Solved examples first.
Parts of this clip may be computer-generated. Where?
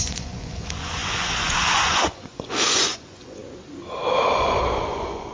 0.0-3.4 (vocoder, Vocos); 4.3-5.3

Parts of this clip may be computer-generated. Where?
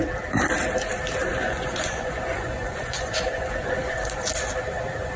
1.2-4.3 (vocoder, Vocos)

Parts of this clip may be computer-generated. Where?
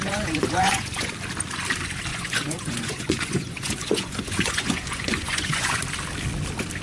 0.0-1.1 (vocoder, Vocos); 2.1-5.8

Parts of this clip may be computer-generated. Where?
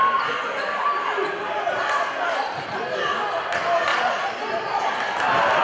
3.9-4.8 (vocoder, Vocos)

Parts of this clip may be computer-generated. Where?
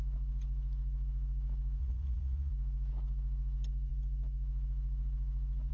1.8-2.5 (vocoder, Vocos)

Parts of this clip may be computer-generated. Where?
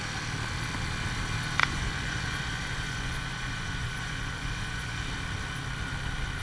1.6-5.0 (vocoder, Vocos)